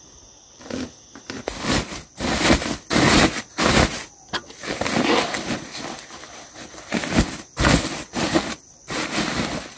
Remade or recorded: recorded